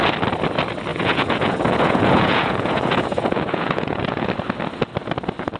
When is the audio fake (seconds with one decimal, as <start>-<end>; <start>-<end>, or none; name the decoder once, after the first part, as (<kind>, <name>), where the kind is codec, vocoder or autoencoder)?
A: 0.9-4.3 (vocoder, Vocos)

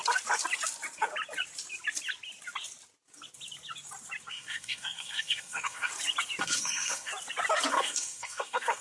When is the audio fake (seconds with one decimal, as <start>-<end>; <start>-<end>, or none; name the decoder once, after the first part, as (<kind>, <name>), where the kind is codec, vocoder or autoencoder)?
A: 4.3-5.9 (codec, SNAC); 6.4-7.1; 7.7-8.8

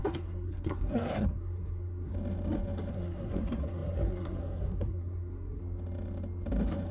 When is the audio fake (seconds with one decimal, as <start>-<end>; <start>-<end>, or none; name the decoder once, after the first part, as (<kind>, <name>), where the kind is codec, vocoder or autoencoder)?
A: 0.0-2.1 (codec, SNAC); 2.9-5.6

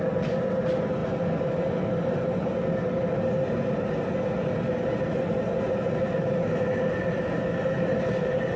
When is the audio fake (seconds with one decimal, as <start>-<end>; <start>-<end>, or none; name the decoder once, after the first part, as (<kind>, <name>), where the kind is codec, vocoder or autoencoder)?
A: none

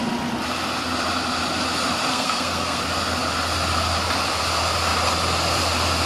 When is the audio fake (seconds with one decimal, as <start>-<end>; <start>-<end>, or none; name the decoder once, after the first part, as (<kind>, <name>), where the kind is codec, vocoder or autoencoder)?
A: 2.1-2.8 (codec, SNAC)